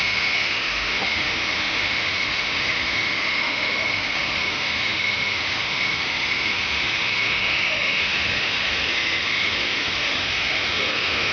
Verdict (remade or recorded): remade